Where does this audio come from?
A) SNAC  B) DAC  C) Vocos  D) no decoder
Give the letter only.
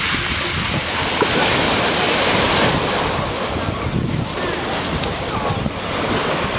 D